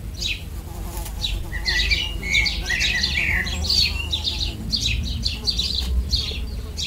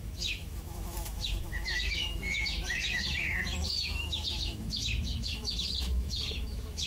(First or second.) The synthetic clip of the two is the second